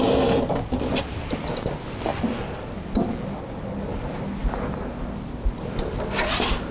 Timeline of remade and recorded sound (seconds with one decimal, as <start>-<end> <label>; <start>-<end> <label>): 0.0-6.7 recorded